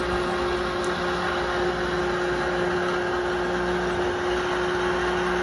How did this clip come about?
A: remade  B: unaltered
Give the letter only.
B